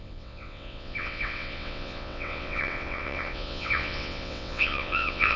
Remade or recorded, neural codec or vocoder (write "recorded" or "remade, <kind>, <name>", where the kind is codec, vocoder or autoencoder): remade, vocoder, WaveNeXt